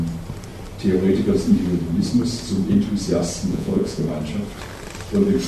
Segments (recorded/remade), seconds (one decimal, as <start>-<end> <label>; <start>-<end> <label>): 0.0-3.5 recorded; 3.5-4.0 remade; 4.0-5.5 recorded

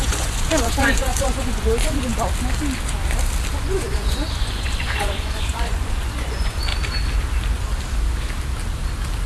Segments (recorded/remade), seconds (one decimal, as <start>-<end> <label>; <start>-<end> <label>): 0.0-2.1 remade; 2.1-3.6 recorded; 3.6-6.7 remade; 6.7-9.3 recorded

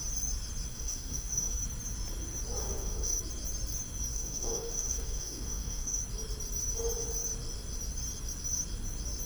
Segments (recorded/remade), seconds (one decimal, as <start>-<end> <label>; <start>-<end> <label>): 0.0-0.7 recorded; 0.7-1.6 remade; 1.6-2.6 recorded; 2.6-3.2 remade; 3.2-4.1 recorded; 4.1-6.0 remade; 6.0-9.3 recorded

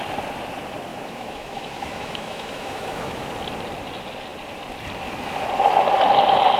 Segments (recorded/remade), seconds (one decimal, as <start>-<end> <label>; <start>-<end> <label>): 0.0-0.9 recorded; 0.9-3.3 remade; 3.3-6.6 recorded

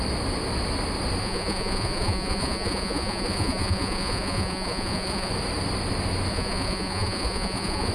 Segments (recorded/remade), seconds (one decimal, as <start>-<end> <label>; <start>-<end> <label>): 0.0-1.2 recorded; 1.2-5.3 remade; 5.3-6.3 recorded; 6.3-7.9 remade

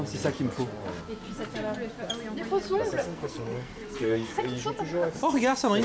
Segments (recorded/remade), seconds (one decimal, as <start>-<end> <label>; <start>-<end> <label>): 0.0-3.0 recorded; 3.0-4.4 remade; 4.4-5.8 recorded

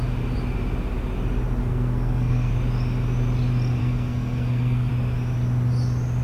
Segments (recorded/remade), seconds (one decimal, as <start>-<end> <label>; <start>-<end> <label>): 0.0-1.6 recorded; 1.6-2.5 remade; 2.5-3.8 recorded; 3.8-4.9 remade; 4.9-6.2 recorded

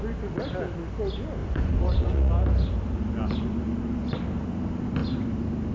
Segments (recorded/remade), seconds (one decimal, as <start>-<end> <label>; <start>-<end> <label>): 0.0-1.4 recorded; 1.4-2.3 remade; 2.3-5.7 recorded